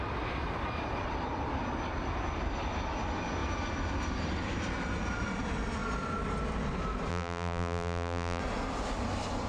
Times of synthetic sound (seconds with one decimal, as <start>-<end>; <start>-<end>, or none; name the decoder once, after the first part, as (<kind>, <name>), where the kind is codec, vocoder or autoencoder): 7.1-8.4 (vocoder, BigVGAN v2)